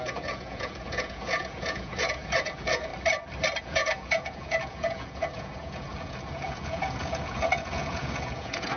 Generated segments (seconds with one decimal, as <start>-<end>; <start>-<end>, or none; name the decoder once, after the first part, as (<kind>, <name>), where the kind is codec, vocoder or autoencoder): 0.0-2.9 (vocoder, Vocos); 3.6-8.8